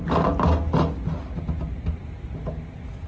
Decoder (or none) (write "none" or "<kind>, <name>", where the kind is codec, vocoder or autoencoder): none